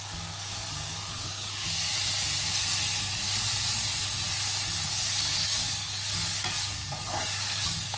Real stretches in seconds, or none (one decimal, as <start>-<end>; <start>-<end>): 1.9-4.9